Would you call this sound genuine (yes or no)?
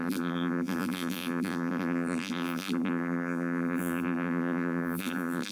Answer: no